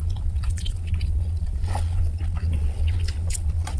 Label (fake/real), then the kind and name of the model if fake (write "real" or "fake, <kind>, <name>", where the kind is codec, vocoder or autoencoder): fake, vocoder, Vocos